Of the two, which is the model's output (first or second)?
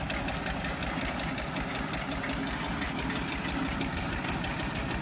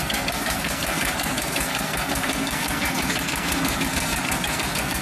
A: second